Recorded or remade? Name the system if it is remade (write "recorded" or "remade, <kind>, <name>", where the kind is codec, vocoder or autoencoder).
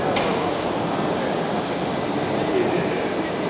recorded